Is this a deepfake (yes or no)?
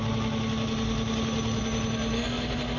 no